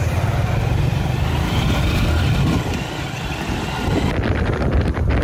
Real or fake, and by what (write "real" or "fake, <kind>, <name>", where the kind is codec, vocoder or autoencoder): fake, vocoder, BigVGAN v2